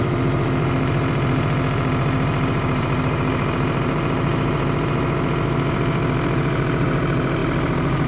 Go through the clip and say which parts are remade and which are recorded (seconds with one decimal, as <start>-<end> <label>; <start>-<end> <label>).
0.0-8.1 remade